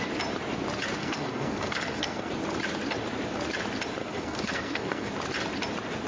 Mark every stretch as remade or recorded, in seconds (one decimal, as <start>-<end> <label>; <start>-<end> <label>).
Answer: 0.0-1.0 recorded; 1.0-2.3 remade; 2.3-4.0 recorded; 4.0-5.1 remade; 5.1-6.1 recorded